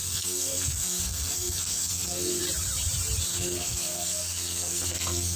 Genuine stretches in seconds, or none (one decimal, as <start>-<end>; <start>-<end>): 2.4-3.3